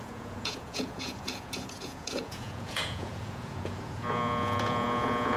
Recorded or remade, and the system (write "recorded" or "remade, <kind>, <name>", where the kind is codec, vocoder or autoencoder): remade, vocoder, Vocos